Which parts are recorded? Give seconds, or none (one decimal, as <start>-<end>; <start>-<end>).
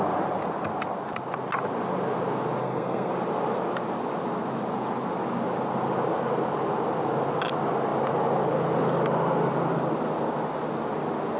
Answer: 0.0-2.6; 3.1-11.4